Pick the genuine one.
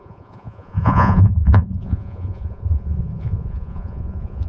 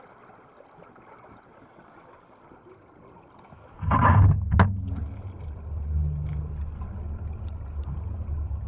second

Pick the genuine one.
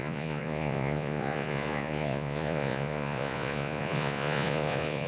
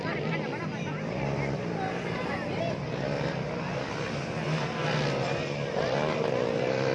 second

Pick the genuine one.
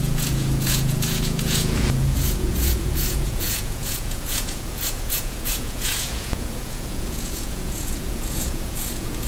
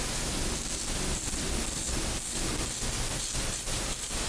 second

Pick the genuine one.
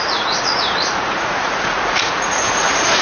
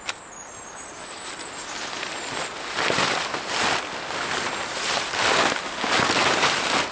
second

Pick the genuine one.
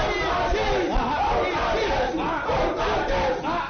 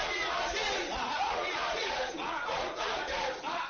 first